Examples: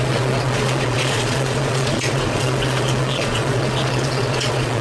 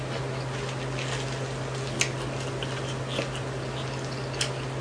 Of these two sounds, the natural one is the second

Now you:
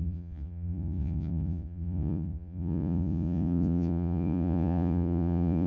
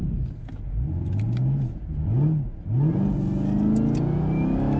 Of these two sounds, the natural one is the second